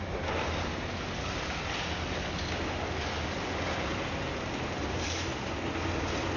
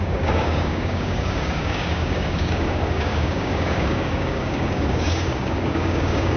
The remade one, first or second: second